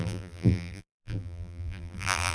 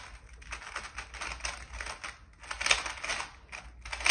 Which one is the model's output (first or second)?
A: first